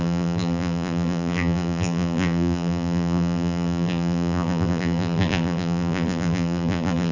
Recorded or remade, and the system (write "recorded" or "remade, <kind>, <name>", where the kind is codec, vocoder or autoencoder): remade, vocoder, BigVGAN v2